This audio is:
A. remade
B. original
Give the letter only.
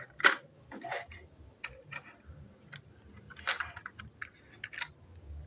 B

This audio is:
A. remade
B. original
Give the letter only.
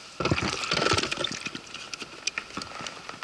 B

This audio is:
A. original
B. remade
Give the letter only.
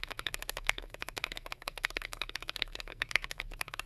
B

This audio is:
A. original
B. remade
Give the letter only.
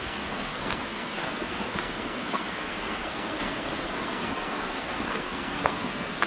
B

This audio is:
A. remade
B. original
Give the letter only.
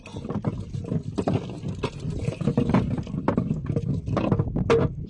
B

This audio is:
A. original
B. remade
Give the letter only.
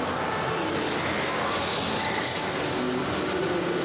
A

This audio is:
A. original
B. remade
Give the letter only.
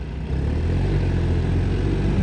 A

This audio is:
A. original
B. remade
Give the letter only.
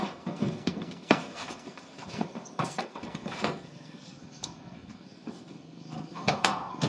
B